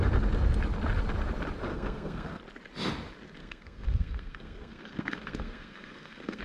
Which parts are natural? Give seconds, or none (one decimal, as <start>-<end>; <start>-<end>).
0.0-1.7; 2.4-3.4